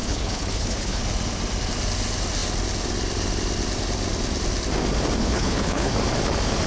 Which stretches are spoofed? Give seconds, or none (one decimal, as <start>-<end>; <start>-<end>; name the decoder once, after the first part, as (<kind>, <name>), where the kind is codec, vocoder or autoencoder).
0.0-1.0 (codec, HILCodec); 5.2-5.9